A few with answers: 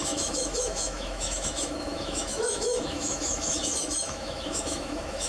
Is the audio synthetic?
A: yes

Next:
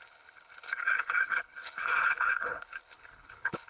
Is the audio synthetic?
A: yes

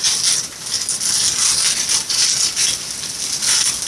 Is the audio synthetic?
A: no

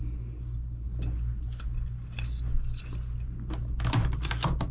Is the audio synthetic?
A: no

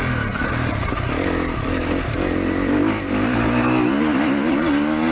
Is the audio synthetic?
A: no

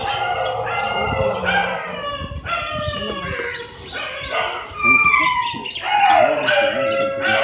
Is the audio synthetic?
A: no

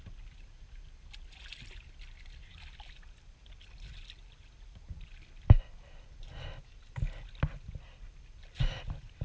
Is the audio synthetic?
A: no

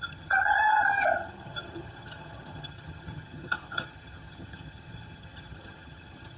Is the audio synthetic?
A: yes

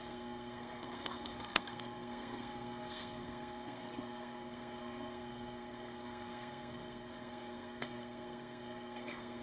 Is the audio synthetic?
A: yes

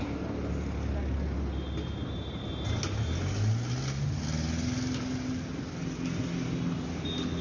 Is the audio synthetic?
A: no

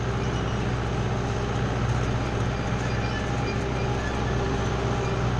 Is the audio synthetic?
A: no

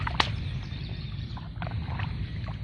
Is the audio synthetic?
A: no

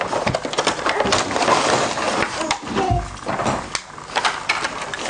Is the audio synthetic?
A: no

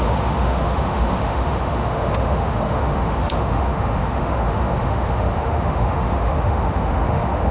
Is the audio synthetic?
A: yes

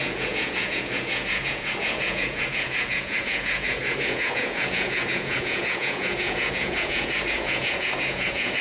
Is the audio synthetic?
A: yes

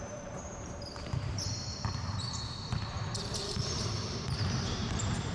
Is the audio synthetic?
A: yes